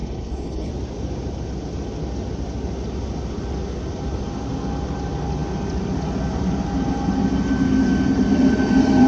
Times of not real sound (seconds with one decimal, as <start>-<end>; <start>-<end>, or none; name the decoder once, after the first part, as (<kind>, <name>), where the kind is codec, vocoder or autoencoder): 0.0-0.7 (codec, HILCodec)